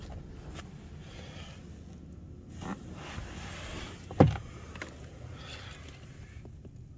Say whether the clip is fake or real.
real